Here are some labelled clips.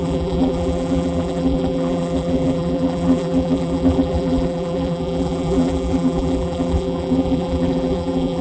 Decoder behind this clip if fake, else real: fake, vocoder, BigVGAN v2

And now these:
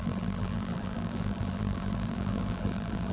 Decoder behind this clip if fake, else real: fake, vocoder, BigVGAN v2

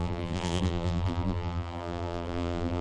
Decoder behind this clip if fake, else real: fake, vocoder, BigVGAN v2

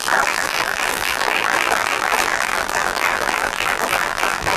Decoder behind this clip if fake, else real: fake, vocoder, BigVGAN v2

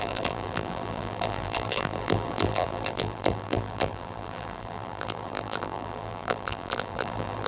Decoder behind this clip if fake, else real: fake, vocoder, BigVGAN v2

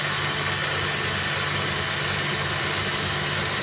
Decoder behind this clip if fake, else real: real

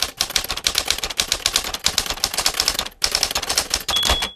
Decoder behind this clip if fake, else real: real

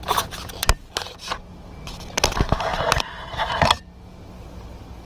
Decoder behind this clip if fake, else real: real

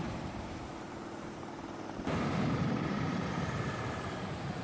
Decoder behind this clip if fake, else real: fake, vocoder, BigVGAN v2